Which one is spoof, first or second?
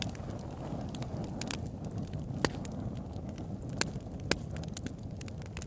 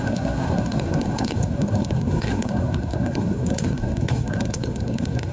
second